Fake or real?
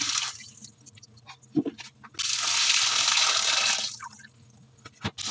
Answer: real